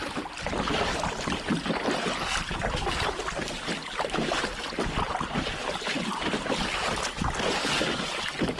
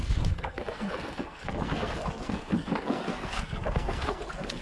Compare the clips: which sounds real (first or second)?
first